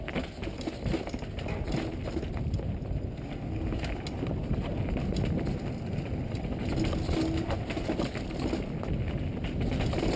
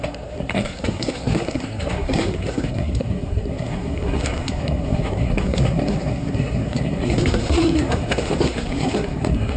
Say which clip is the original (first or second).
first